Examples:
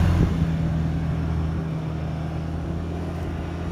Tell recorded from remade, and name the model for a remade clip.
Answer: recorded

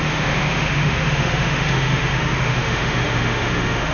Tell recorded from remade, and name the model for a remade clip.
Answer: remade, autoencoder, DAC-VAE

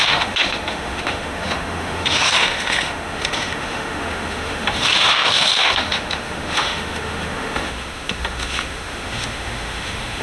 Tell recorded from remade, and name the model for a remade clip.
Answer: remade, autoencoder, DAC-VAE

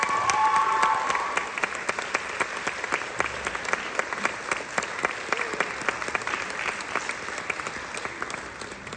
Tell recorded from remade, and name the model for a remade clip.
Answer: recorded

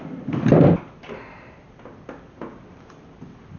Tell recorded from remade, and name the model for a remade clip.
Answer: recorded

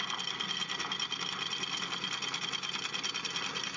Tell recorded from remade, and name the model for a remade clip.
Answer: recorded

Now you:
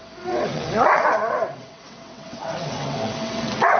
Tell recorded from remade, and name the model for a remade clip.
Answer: remade, vocoder, WaveNeXt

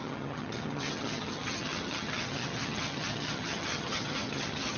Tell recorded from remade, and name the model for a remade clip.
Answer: remade, vocoder, HiFi-GAN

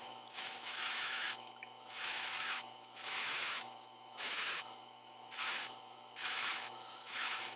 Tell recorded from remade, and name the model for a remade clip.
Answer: remade, autoencoder, DAC-VAE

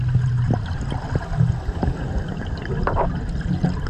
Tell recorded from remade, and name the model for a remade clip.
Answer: recorded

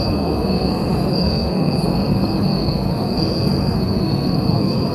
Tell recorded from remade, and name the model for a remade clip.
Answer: remade, codec, SNAC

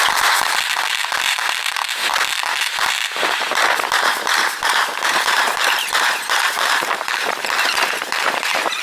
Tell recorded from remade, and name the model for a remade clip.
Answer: remade, vocoder, BigVGAN v2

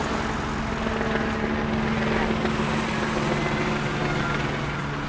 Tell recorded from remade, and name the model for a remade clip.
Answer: recorded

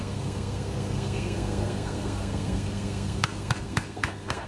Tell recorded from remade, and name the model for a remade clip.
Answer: remade, codec, SNAC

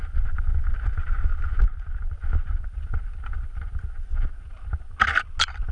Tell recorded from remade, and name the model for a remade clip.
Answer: recorded